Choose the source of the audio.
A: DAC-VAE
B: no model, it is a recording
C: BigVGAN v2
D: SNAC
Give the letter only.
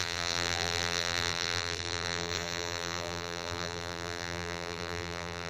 C